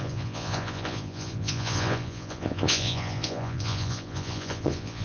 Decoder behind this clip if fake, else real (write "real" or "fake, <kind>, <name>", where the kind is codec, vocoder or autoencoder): fake, vocoder, Vocos